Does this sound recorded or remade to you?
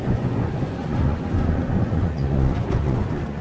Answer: remade